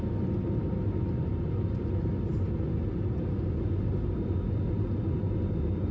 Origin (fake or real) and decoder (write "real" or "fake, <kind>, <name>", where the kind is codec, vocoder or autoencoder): real